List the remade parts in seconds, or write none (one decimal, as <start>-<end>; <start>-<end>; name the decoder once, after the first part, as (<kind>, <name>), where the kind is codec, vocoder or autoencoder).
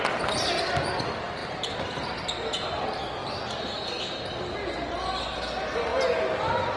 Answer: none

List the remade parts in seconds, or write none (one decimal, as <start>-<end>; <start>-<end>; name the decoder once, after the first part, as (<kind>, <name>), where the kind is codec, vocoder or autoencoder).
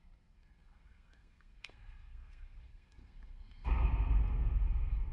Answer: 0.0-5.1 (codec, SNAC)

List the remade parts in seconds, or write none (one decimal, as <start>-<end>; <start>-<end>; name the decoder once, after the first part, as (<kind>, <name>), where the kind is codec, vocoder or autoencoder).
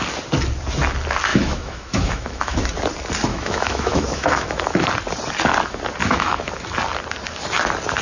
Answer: 1.3-2.6 (autoencoder, DAC-VAE); 3.3-4.9; 6.0-6.5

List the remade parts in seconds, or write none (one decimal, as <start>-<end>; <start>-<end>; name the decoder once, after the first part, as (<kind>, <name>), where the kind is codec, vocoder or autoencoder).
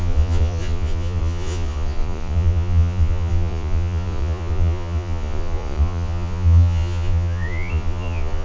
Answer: 0.0-8.4 (vocoder, Vocos)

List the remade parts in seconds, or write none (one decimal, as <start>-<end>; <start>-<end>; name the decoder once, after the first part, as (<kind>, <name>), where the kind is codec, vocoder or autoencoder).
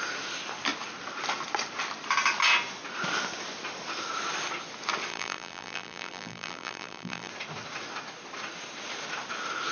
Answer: 5.1-7.3 (vocoder, BigVGAN v2)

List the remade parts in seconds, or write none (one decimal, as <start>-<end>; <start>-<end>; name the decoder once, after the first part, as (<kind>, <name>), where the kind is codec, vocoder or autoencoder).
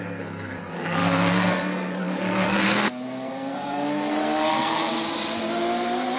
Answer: 0.0-4.9 (codec, SNAC)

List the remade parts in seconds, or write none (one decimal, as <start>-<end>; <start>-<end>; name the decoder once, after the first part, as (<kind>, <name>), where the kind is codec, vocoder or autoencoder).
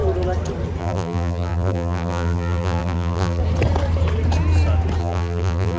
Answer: 0.8-3.4 (vocoder, BigVGAN v2); 5.0-5.8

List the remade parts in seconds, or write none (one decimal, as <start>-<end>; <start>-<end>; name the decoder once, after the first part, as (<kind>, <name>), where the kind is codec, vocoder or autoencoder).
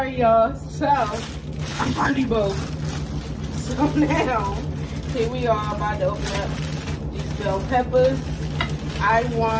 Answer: 1.7-2.3 (codec, HILCodec)